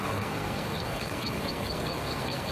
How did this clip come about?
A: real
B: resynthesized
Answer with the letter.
B